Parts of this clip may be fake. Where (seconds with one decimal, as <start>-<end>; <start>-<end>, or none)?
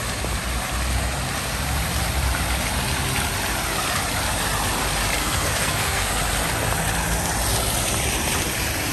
5.2-6.1